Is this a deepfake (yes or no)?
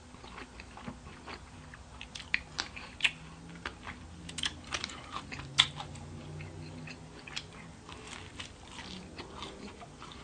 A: no